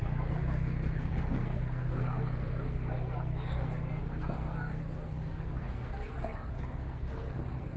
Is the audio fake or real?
fake